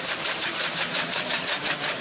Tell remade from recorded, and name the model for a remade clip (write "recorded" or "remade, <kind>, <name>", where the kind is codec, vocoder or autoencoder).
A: remade, vocoder, BigVGAN v2